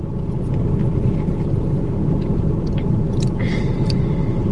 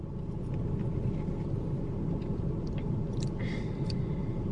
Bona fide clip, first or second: first